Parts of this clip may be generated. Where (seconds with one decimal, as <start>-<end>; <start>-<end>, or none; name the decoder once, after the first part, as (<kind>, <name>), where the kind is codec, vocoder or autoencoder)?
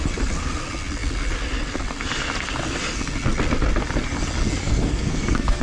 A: 4.6-5.6 (codec, SNAC)